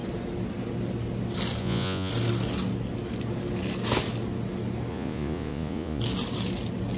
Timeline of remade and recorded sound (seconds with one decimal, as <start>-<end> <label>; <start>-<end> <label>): 0.0-1.6 recorded; 1.6-2.1 remade; 2.1-4.9 recorded; 4.9-6.0 remade; 6.0-7.0 recorded